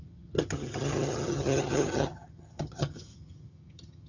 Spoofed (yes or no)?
yes